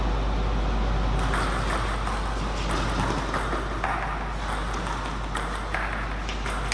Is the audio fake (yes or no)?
no